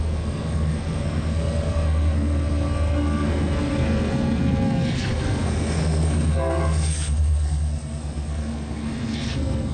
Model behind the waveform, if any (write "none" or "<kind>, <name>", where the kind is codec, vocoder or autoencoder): codec, SNAC